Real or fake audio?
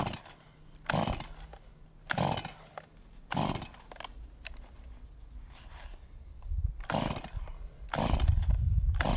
real